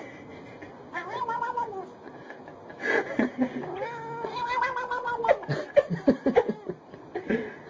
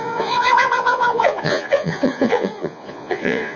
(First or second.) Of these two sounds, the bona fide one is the first